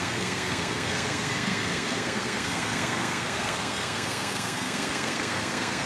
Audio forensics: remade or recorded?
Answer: remade